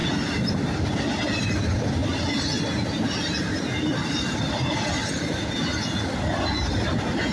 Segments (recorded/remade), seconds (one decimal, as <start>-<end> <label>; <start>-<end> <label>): 0.0-7.3 recorded